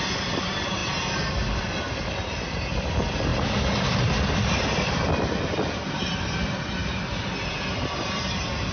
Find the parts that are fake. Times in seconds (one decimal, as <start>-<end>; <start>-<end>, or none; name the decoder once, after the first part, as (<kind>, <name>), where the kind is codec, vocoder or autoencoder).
3.3-5.1 (vocoder, BigVGAN v2)

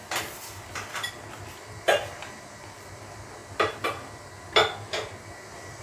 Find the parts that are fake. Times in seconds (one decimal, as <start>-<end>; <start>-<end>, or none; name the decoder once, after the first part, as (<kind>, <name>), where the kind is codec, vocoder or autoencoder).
0.0-1.1 (vocoder, BigVGAN v2)

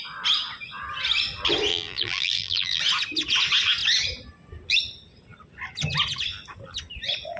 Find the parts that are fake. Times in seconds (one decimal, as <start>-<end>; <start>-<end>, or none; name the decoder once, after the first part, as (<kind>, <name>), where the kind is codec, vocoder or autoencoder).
1.7-2.8 (vocoder, BigVGAN v2)

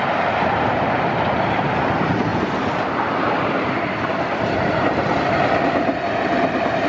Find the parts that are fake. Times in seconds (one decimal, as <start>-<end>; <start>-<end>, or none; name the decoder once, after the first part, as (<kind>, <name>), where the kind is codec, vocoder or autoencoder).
none

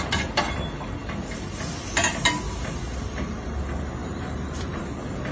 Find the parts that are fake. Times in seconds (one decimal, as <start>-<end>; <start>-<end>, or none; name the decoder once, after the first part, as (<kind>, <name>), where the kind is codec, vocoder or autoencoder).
4.0-4.8 (vocoder, BigVGAN v2)

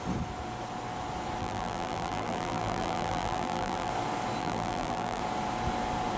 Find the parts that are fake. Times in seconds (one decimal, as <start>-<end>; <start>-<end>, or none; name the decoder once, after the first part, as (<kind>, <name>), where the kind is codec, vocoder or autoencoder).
1.4-3.9 (vocoder, BigVGAN v2); 4.4-5.2

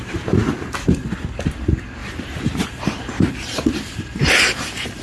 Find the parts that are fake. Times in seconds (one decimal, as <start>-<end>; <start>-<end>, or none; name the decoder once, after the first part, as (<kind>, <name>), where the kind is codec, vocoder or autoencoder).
2.0-5.0 (vocoder, BigVGAN v2)

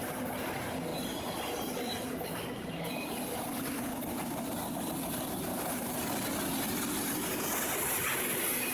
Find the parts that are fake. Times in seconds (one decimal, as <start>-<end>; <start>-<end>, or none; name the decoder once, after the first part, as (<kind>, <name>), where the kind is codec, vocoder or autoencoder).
none